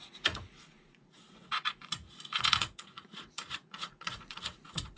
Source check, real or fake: fake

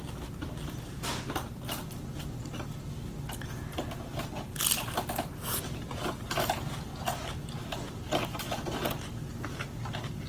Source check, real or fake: real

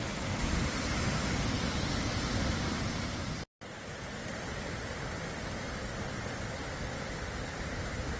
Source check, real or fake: real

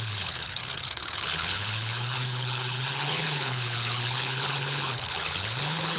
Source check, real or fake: fake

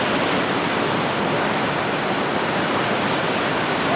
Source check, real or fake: real